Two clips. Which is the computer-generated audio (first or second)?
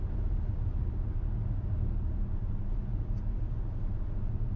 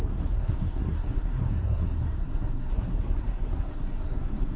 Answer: second